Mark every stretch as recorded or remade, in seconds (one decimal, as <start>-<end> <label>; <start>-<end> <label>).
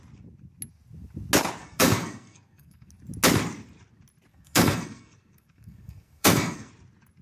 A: 0.0-1.6 recorded; 1.6-2.9 remade; 2.9-4.3 recorded; 4.3-6.7 remade; 6.7-7.2 recorded